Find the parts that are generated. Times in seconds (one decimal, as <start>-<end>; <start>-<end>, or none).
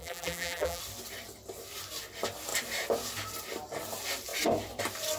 0.0-0.8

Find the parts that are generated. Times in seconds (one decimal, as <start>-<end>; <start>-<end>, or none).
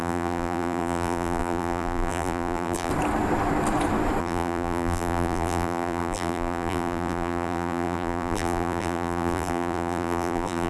0.0-2.9; 4.2-10.7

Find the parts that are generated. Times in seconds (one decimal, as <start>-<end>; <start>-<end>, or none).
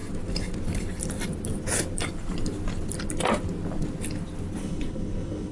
4.6-5.5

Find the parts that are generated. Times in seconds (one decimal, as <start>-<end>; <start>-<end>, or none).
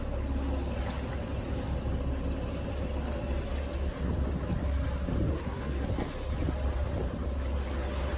5.3-5.9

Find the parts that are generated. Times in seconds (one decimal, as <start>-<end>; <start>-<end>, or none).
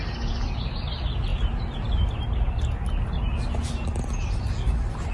none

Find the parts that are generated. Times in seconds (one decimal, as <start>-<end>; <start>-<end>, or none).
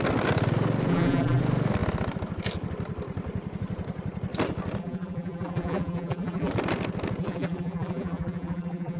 0.9-1.4; 4.8-6.5; 7.2-9.0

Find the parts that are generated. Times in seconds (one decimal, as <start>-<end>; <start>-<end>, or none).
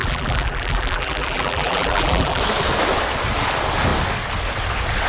0.0-2.4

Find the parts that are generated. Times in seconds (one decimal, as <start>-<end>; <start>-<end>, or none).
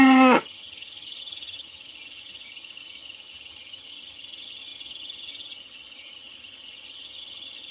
0.0-7.7